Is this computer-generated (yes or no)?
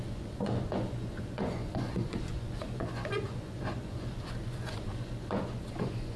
yes